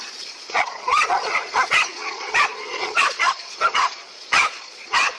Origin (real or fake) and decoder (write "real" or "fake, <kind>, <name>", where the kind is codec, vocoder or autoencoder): fake, vocoder, Vocos